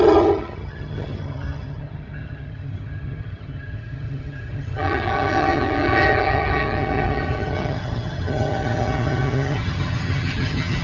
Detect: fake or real fake